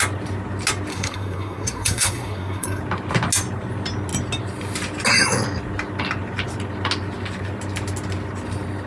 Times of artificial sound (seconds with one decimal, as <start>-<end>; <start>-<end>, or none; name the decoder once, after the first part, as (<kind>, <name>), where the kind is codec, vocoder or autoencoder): 0.9-2.8 (codec, SNAC)